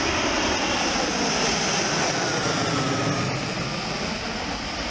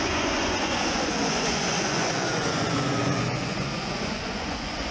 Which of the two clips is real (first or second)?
first